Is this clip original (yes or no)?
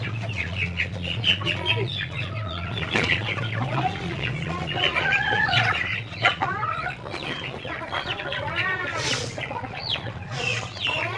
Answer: no